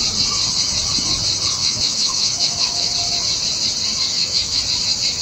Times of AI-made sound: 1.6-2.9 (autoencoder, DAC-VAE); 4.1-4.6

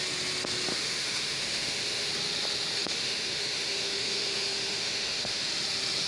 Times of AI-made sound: 0.7-2.1 (autoencoder, DAC-VAE); 2.7-5.5